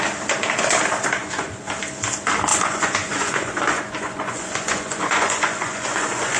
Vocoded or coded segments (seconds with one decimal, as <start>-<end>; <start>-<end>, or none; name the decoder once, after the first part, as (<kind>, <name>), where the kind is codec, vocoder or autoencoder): 1.2-1.7 (vocoder, Vocos); 2.5-6.4